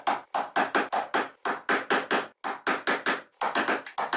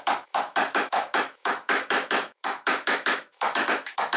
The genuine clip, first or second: first